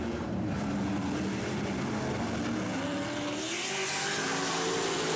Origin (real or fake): real